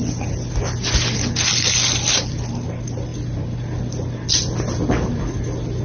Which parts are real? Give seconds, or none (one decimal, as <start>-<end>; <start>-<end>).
0.0-5.8